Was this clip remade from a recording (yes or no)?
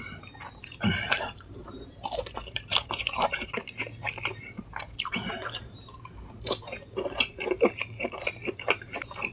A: yes